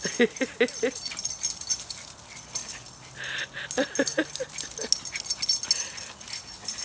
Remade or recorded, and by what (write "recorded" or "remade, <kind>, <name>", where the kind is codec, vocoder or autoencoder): recorded